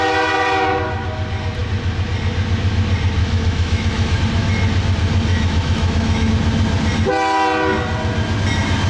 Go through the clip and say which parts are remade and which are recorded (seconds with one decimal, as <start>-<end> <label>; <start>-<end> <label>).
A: 0.0-3.2 recorded; 3.2-4.2 remade; 4.2-5.3 recorded; 5.3-6.3 remade; 6.3-8.9 recorded